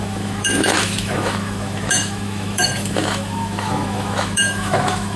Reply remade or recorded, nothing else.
remade